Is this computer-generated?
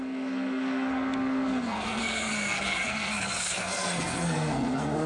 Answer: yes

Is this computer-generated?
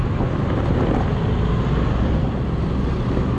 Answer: no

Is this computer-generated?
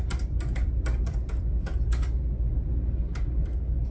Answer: no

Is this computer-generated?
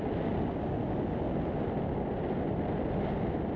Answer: no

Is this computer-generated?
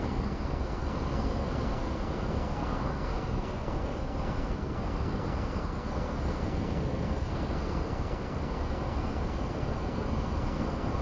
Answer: yes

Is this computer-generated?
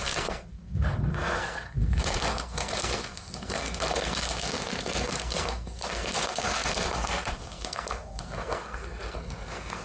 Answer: yes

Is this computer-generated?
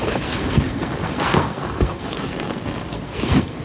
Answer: yes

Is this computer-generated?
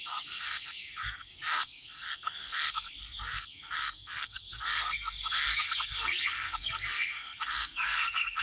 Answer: yes